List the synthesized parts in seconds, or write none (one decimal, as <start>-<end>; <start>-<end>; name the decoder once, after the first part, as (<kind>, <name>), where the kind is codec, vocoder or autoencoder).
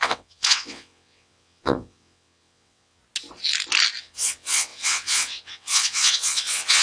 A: 0.0-3.0 (vocoder, WaveNeXt); 4.0-6.8